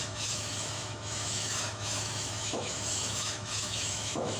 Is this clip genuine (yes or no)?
no